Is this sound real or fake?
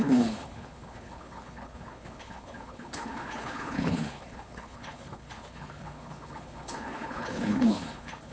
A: fake